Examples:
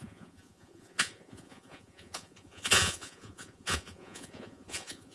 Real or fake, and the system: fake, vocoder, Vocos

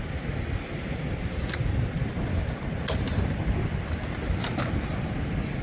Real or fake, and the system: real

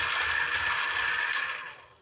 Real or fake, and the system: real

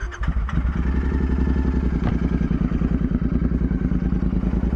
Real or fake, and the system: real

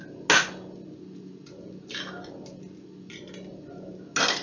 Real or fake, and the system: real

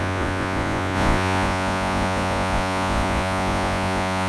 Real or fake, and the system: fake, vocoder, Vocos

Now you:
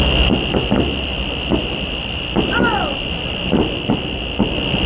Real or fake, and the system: real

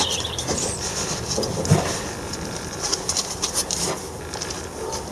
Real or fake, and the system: real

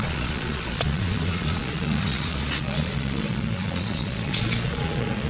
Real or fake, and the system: fake, vocoder, Vocos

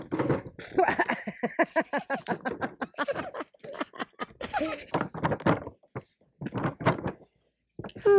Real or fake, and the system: real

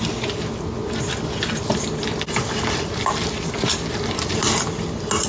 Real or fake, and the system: real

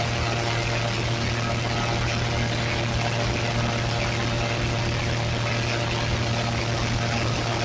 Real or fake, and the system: real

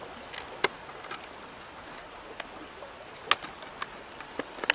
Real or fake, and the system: real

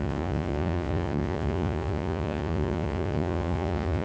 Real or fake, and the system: fake, vocoder, Vocos